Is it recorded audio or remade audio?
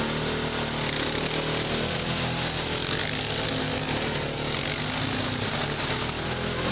recorded